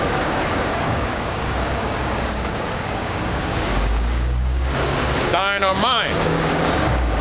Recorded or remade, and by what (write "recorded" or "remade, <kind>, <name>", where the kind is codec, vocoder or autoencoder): remade, codec, DAC